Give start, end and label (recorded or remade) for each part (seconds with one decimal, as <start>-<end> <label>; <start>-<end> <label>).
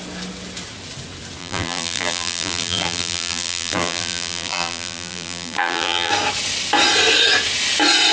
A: 0.0-1.4 recorded; 1.4-6.1 remade; 6.1-8.1 recorded